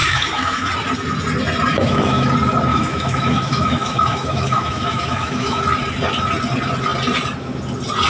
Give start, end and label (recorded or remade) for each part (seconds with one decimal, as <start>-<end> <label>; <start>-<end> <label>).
0.0-0.7 remade; 0.7-1.7 recorded; 1.7-2.3 remade; 2.3-2.7 recorded; 2.7-5.6 remade; 5.6-8.1 recorded